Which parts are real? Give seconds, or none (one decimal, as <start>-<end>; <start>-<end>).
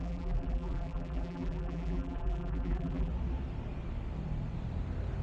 3.1-5.2